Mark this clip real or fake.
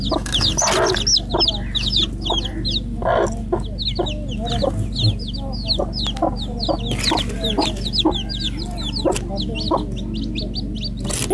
real